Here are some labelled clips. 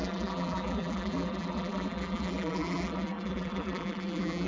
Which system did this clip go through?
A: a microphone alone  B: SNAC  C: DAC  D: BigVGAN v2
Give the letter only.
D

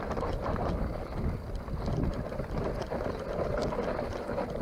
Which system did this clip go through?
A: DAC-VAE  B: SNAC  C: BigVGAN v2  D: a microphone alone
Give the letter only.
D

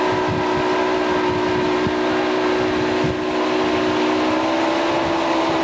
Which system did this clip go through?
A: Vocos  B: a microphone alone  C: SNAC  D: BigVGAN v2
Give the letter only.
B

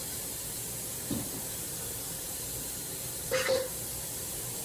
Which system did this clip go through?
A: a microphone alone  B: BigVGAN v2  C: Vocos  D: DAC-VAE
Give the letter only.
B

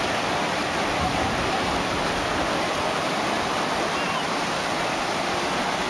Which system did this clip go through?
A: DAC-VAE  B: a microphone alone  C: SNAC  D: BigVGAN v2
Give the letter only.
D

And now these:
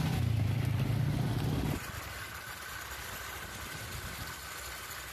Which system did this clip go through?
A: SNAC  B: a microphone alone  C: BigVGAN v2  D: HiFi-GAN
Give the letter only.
B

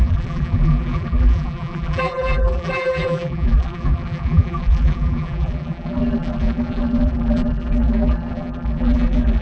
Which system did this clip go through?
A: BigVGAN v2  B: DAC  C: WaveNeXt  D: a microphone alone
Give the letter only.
A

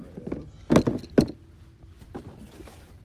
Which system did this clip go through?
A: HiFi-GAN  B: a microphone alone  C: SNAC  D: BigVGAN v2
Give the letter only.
B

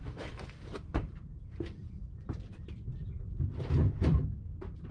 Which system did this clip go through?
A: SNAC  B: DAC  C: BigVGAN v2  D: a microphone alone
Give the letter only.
C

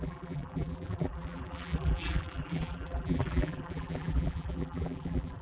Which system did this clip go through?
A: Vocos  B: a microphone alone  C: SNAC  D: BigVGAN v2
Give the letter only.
D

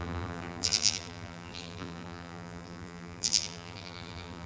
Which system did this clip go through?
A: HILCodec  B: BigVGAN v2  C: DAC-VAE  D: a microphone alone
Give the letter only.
B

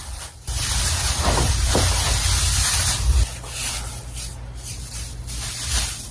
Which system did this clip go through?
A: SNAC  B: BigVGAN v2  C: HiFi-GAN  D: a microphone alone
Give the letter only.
D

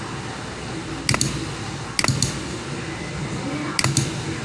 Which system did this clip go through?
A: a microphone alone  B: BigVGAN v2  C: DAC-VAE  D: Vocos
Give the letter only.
A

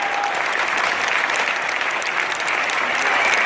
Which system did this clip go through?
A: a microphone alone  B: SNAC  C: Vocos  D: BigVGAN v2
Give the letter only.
A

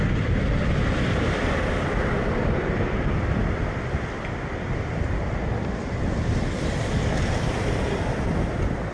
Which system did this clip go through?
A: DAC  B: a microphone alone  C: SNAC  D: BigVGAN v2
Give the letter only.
D